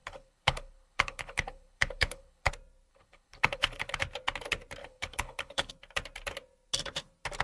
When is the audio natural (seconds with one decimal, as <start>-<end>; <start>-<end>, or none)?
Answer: 2.5-2.9; 4.0-4.8; 5.7-7.4